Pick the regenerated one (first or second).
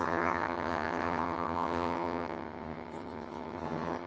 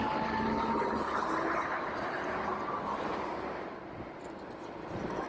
first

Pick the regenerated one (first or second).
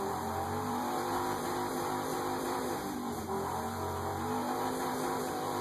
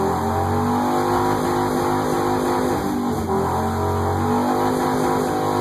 first